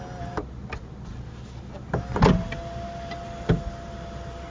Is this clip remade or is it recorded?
recorded